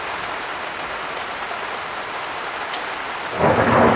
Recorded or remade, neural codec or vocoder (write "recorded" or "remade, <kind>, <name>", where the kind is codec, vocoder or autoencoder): recorded